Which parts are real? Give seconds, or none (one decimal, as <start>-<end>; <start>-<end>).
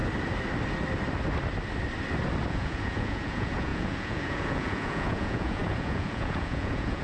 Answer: 0.0-2.5